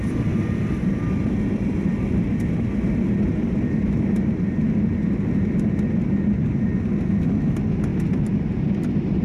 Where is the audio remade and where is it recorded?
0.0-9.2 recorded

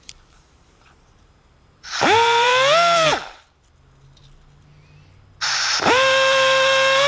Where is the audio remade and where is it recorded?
0.0-2.5 remade; 2.5-5.9 recorded; 5.9-7.1 remade

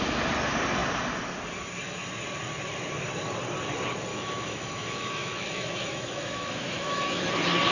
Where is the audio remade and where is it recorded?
0.0-4.1 recorded; 4.1-7.3 remade; 7.3-7.7 recorded